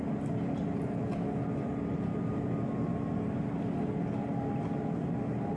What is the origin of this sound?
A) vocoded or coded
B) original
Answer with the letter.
B